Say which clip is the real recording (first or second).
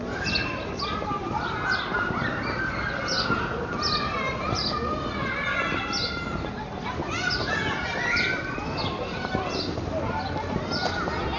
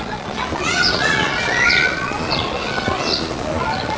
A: first